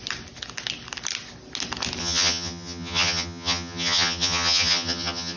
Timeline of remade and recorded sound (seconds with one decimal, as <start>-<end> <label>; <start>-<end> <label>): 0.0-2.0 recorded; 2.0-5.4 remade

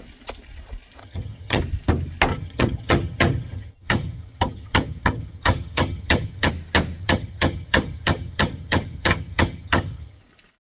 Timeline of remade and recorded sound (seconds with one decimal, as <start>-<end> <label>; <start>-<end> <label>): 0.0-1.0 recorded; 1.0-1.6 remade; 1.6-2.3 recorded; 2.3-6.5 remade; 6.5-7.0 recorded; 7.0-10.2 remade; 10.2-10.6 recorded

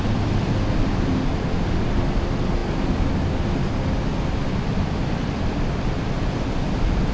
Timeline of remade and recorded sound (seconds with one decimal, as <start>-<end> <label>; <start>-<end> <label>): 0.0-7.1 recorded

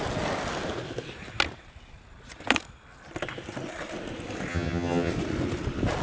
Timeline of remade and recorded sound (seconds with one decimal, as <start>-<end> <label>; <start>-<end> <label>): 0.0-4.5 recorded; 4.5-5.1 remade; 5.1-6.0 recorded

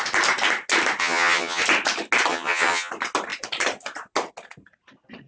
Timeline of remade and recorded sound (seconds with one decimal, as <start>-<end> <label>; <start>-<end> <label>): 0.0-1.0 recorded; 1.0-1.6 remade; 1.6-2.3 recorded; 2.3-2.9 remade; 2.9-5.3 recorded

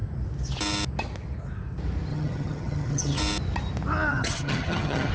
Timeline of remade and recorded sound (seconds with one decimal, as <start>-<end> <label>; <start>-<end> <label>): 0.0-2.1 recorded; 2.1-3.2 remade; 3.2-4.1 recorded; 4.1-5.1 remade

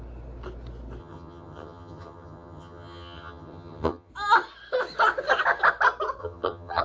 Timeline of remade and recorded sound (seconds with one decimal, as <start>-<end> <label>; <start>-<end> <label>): 0.0-1.0 recorded; 1.0-4.1 remade; 4.1-6.2 recorded; 6.2-6.8 remade

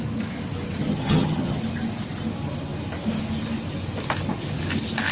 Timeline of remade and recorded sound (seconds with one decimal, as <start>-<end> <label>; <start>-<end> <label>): 0.0-0.8 recorded; 0.8-1.6 remade; 1.6-5.1 recorded